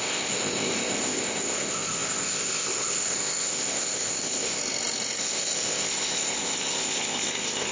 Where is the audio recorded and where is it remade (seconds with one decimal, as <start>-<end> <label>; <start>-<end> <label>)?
0.0-4.6 remade; 4.6-5.2 recorded; 5.2-7.7 remade